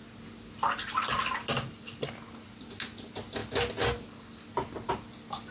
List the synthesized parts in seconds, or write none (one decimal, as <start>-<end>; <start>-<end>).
none